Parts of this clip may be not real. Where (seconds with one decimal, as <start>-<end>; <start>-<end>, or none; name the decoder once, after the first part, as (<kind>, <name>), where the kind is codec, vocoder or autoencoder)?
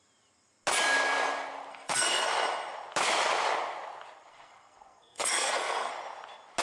1.7-2.3 (codec, SNAC); 4.3-5.9